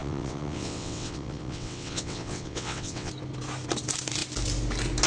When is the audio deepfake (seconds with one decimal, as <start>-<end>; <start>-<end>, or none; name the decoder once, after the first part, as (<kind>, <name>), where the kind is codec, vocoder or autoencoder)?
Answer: 0.0-3.1 (vocoder, WaveNeXt)